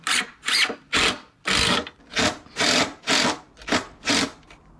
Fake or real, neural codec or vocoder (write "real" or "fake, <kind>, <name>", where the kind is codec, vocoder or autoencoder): real